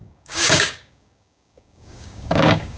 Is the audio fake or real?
fake